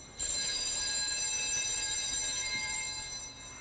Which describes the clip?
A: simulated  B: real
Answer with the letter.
B